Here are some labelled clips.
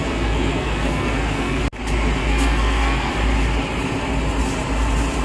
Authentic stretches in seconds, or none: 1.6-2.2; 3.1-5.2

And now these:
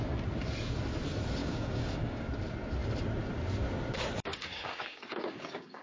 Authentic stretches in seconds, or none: 0.0-1.4; 2.3-4.3

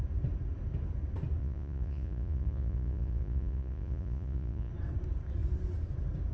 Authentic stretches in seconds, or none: 0.0-1.4; 4.7-6.3

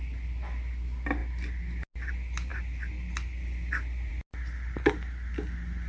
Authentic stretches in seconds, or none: 0.0-5.9